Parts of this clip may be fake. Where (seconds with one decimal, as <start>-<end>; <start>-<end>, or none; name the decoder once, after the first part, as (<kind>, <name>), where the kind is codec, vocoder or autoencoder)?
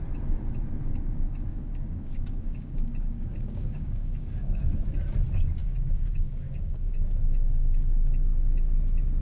0.8-4.6 (codec, DAC); 5.6-6.9